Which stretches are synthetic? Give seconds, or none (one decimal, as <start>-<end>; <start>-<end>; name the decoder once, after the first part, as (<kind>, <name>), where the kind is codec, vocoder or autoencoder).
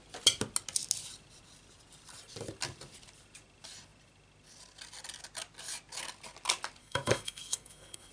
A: 6.8-8.1 (codec, SNAC)